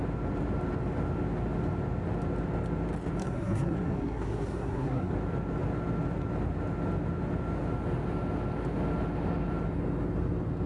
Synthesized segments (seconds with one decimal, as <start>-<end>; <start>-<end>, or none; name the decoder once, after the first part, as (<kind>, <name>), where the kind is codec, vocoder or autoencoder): 3.2-5.1 (codec, SNAC)